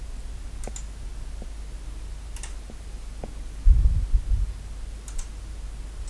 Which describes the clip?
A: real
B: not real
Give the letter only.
A